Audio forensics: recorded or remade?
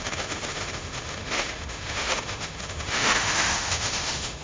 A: remade